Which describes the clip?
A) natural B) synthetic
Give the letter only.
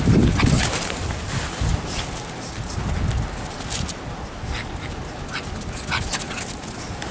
A